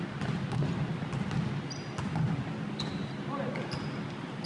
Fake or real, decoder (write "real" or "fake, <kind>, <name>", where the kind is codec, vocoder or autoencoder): real